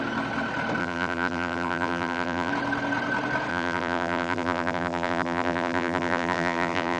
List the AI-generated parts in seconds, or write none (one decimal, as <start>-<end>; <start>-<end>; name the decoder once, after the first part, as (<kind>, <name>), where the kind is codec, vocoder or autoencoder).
0.8-2.5 (vocoder, BigVGAN v2); 3.5-7.0